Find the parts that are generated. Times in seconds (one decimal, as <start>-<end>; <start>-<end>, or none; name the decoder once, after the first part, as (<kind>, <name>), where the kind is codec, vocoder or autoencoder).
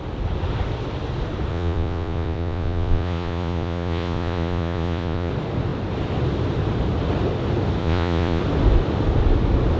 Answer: 1.5-5.3 (vocoder, Vocos); 7.8-8.4